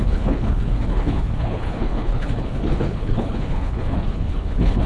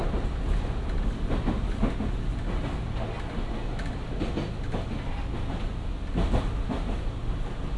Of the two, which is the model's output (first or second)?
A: first